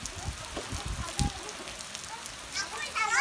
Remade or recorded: recorded